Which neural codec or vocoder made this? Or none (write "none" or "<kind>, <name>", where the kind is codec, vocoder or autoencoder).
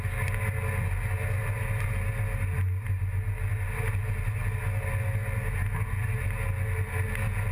none